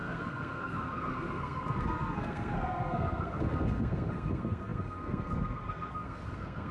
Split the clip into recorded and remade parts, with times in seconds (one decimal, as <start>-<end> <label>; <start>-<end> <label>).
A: 0.0-6.7 remade